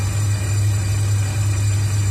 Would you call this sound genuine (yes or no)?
yes